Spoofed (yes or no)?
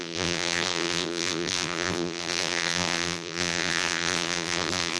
yes